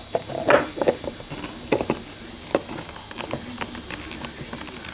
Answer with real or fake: real